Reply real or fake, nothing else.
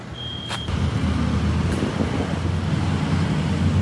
real